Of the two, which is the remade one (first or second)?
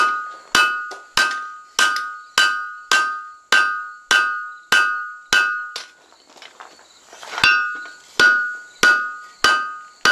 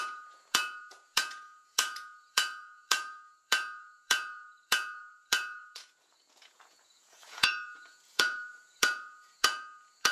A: second